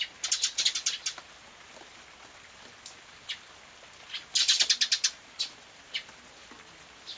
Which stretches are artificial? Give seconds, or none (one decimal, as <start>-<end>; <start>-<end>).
none